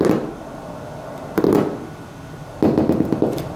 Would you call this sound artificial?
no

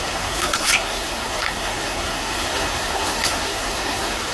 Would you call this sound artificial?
yes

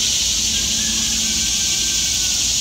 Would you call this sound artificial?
no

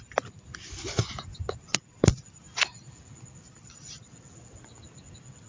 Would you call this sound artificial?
no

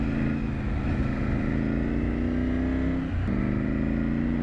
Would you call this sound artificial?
no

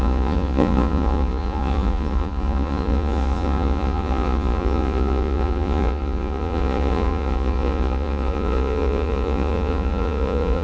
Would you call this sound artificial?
yes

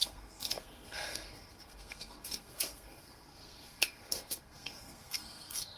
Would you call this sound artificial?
yes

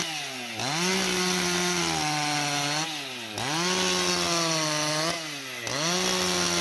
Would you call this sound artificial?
no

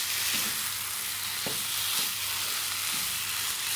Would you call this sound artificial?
no